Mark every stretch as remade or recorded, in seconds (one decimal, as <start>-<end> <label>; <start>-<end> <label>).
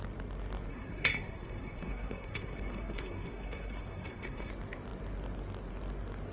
0.0-0.7 recorded; 0.7-4.5 remade; 4.5-6.3 recorded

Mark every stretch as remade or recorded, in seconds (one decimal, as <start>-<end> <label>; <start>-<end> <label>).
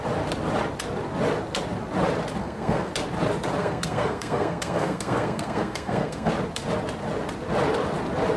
0.0-2.4 recorded; 2.4-2.9 remade; 2.9-3.6 recorded; 3.6-6.3 remade; 6.3-8.4 recorded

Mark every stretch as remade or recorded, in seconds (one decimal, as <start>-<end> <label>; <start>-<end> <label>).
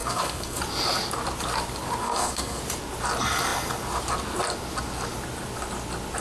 0.0-0.6 remade; 0.6-2.0 recorded; 2.0-2.6 remade; 2.6-6.2 recorded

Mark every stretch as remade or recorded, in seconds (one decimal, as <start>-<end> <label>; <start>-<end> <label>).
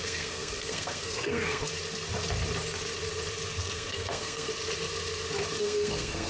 0.0-1.6 remade; 1.6-3.6 recorded; 3.6-4.5 remade; 4.5-5.6 recorded; 5.6-6.3 remade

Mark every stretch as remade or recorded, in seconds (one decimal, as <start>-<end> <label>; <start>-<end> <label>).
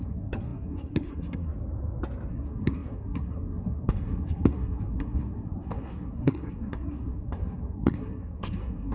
0.0-1.5 remade; 1.5-2.3 recorded; 2.3-8.9 remade